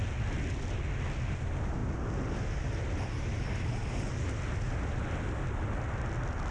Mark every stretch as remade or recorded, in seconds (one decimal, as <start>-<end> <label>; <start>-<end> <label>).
0.0-6.5 recorded